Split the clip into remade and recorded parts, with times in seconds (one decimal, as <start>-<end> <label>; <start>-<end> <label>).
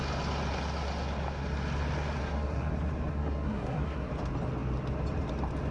0.0-2.2 recorded; 2.2-2.7 remade; 2.7-3.1 recorded; 3.1-4.1 remade; 4.1-5.7 recorded